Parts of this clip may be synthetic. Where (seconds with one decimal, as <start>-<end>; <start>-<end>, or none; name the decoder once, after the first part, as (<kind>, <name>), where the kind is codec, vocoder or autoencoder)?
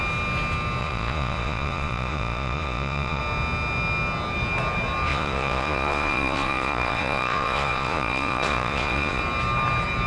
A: 0.8-3.2 (vocoder, Vocos); 5.1-9.2